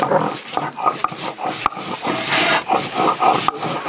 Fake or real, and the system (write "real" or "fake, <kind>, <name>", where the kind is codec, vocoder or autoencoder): real